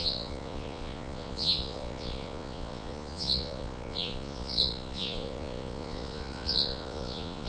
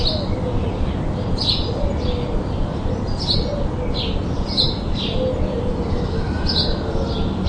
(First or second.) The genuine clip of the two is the second